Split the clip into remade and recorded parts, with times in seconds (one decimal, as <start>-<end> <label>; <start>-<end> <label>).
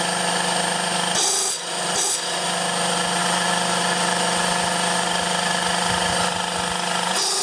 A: 0.0-7.4 recorded